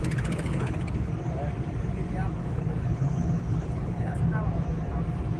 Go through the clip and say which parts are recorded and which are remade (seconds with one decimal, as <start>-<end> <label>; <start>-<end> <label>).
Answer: 0.0-1.1 remade; 1.1-2.4 recorded; 2.4-4.2 remade; 4.2-5.4 recorded